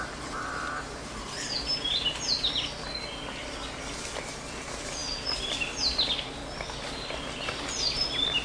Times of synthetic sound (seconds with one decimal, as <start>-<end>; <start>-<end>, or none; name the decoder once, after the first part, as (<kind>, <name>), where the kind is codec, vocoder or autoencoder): none